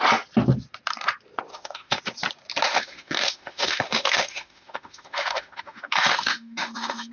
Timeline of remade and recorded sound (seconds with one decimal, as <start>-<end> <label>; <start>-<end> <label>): 0.0-1.5 recorded; 1.5-2.0 remade; 2.0-2.7 recorded; 2.7-7.1 remade